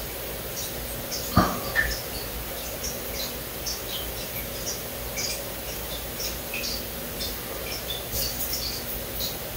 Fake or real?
real